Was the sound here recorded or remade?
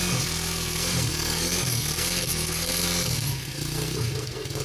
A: remade